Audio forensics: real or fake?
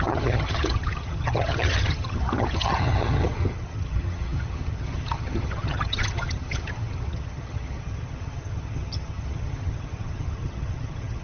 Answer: fake